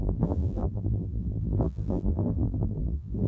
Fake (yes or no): yes